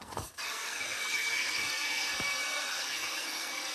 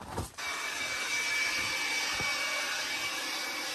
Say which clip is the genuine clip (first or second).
second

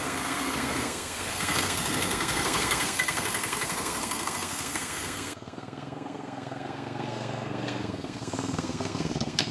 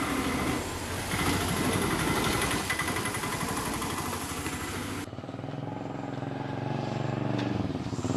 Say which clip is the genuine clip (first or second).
second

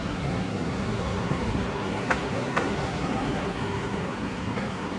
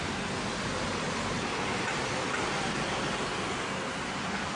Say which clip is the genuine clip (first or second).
second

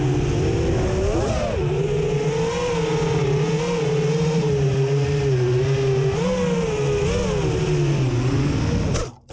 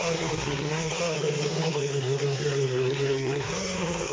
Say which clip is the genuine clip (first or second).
first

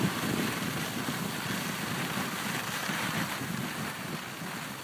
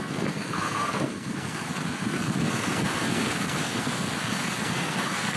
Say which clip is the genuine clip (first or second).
first